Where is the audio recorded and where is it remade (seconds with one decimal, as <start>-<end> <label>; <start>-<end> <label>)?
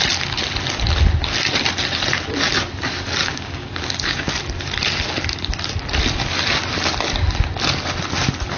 0.0-3.2 recorded; 3.2-4.3 remade; 4.3-8.6 recorded